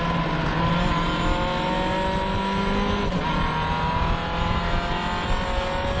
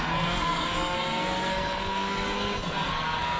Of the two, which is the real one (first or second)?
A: first